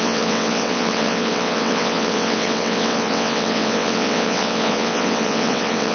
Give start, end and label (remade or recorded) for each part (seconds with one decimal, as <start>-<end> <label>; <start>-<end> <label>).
0.0-5.9 remade